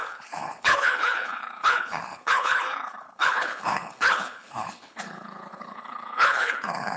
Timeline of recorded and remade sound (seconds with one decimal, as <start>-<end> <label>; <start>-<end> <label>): 0.0-7.0 remade